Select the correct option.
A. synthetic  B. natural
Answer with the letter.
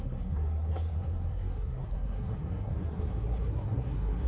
A